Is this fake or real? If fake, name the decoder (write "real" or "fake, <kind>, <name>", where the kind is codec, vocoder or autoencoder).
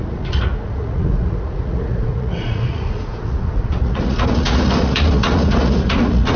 fake, vocoder, Vocos